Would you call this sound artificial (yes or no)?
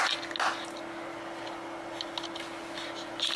no